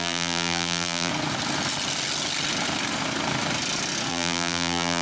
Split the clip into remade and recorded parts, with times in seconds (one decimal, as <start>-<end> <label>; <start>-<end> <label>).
0.0-1.1 remade; 1.1-4.1 recorded; 4.1-5.0 remade